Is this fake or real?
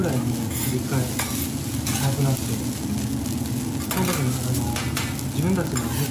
real